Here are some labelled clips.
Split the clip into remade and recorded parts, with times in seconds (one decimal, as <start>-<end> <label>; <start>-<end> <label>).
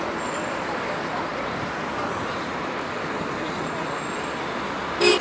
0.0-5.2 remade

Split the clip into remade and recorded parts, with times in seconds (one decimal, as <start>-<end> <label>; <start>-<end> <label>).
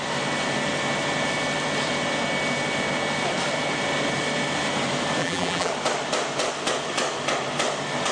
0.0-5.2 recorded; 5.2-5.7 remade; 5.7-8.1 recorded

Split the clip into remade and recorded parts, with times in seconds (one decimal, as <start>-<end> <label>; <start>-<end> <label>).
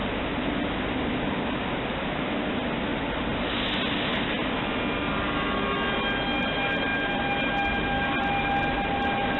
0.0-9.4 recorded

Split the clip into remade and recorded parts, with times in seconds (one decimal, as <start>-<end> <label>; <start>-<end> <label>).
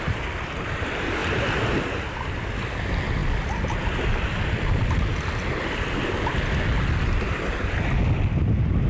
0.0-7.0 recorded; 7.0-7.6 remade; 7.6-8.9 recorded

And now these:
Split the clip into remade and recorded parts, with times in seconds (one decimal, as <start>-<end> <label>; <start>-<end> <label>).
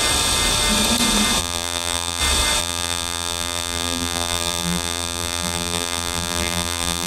0.0-1.4 recorded; 1.4-2.2 remade; 2.2-2.6 recorded; 2.6-7.1 remade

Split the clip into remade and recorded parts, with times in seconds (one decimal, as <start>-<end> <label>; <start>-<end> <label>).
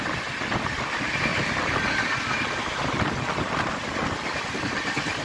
0.0-1.3 remade; 1.3-4.4 recorded; 4.4-5.2 remade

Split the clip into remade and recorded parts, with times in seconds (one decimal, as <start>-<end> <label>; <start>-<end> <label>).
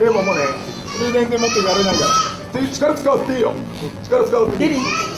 0.0-0.6 recorded; 0.6-1.1 remade; 1.1-3.0 recorded; 3.0-4.6 remade; 4.6-5.2 recorded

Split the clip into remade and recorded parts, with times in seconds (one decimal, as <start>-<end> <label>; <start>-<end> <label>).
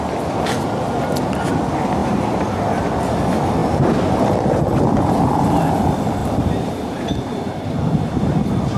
0.0-2.0 recorded; 2.0-2.6 remade; 2.6-6.2 recorded; 6.2-8.3 remade; 8.3-8.8 recorded